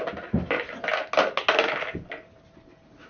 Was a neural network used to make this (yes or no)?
no